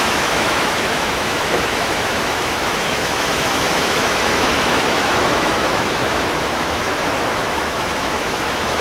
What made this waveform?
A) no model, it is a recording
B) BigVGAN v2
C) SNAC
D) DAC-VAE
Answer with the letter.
D